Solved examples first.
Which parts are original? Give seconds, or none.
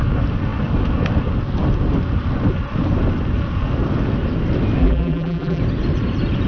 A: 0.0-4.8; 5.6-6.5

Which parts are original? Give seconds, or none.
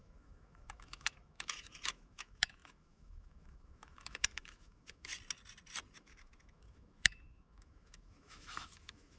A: 5.1-6.0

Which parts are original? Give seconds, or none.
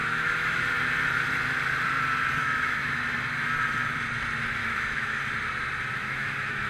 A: 0.6-2.4; 3.0-4.6; 5.2-6.0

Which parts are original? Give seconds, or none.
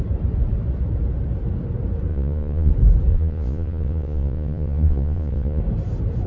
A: 0.0-2.1; 2.7-3.1; 5.6-6.3